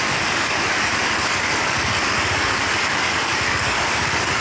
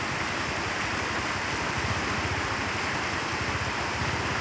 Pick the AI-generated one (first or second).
first